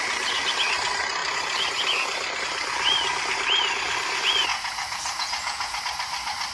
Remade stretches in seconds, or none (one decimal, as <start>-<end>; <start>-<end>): 4.5-5.8